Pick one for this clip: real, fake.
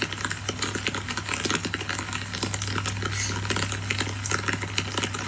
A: real